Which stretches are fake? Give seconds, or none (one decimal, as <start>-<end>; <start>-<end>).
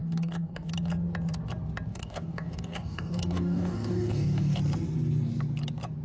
0.0-0.7; 1.9-4.6